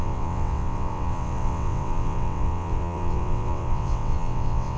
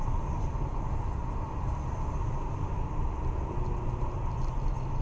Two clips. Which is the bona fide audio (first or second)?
second